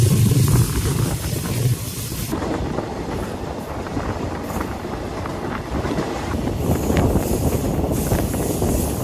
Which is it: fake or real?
fake